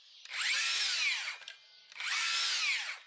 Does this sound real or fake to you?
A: real